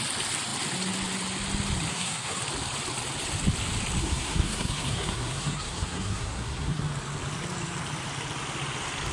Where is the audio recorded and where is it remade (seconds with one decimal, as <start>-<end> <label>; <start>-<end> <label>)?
0.0-1.9 recorded; 1.9-2.4 remade; 2.4-4.0 recorded; 4.0-6.8 remade; 6.8-9.1 recorded